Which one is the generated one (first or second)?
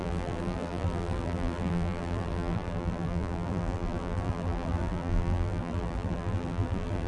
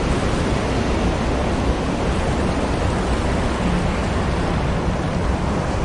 first